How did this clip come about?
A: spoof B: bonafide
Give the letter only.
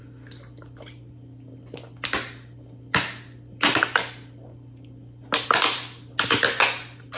B